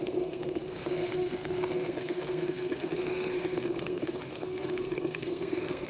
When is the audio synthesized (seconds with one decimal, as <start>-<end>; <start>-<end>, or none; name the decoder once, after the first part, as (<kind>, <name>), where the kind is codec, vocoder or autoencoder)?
0.0-5.9 (codec, SNAC)